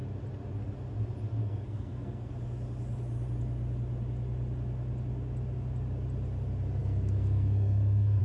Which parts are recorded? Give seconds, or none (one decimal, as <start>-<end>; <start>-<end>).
0.0-1.4; 2.3-6.8